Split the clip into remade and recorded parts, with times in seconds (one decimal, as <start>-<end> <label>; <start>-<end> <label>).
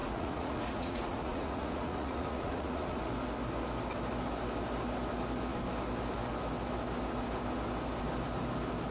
0.0-3.0 remade; 3.0-8.9 recorded